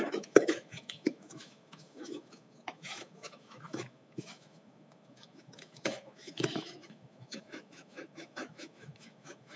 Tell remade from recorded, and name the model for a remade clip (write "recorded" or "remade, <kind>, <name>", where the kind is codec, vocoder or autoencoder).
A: remade, autoencoder, DAC-VAE